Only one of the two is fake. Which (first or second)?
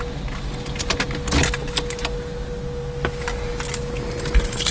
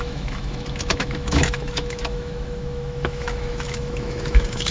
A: second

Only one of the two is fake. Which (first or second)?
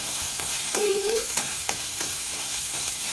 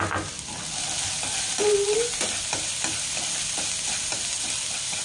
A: first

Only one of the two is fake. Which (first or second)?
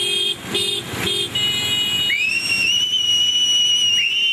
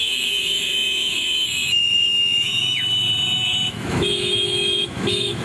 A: second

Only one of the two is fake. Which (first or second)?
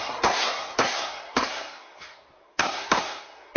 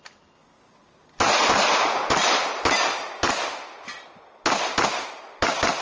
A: first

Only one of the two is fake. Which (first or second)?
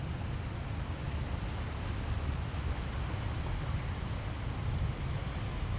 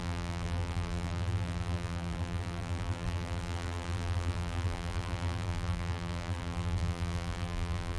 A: second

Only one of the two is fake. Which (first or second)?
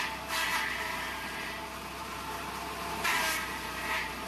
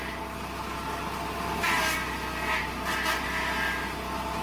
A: first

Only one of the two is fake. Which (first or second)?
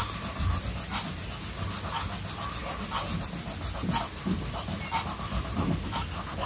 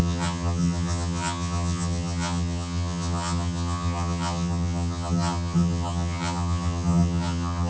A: second